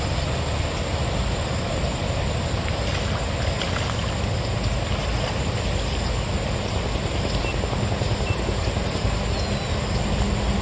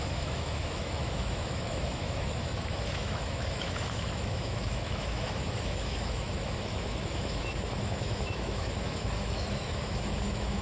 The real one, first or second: first